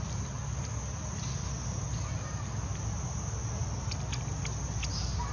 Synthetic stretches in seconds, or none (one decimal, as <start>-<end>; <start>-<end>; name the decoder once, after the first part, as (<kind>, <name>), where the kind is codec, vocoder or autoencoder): none